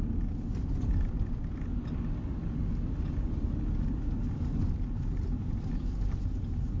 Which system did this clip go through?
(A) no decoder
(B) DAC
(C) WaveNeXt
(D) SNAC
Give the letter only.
A